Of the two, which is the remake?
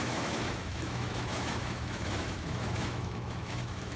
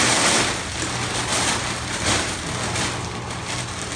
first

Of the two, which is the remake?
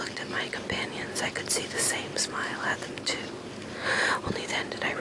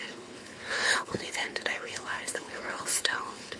second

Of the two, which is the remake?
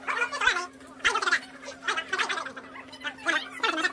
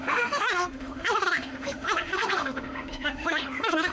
second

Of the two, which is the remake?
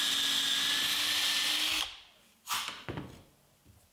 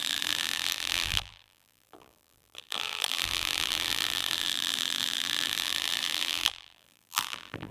second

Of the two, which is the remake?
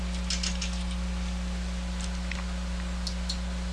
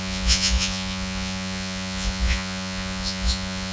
second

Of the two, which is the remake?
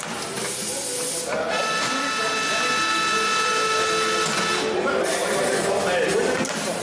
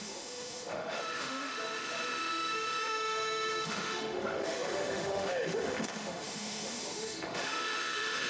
second